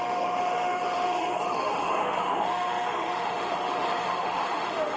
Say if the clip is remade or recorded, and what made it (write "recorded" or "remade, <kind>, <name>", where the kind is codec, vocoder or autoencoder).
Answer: remade, autoencoder, DAC-VAE